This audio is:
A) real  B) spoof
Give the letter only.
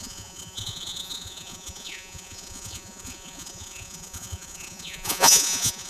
B